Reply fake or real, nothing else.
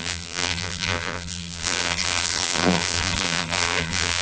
fake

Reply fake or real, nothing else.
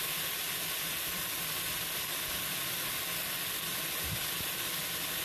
real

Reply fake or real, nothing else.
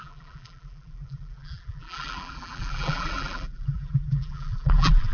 fake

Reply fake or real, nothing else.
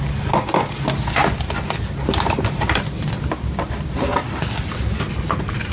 real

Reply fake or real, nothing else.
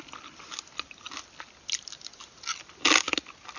real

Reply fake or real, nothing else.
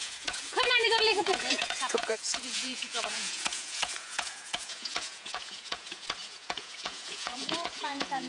fake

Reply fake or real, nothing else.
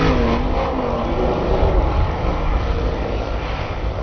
real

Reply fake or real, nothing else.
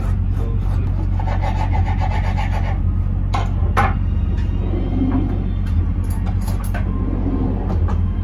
real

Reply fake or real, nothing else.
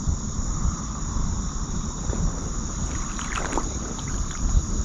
fake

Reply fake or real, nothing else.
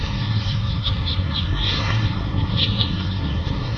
fake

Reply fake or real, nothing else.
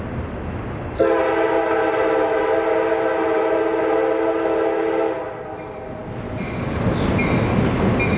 real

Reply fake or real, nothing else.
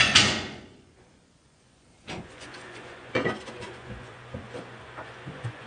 fake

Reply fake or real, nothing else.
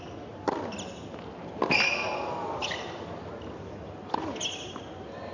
real